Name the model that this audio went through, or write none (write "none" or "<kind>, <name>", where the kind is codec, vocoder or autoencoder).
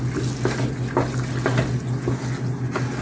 none